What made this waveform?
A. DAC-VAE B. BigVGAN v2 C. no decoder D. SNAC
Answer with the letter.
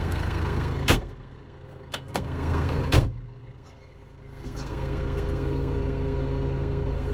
D